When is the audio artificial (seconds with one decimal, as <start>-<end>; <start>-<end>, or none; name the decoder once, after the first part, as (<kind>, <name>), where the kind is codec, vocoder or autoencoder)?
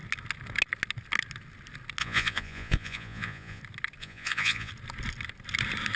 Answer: 2.0-3.6 (vocoder, Vocos); 4.0-4.7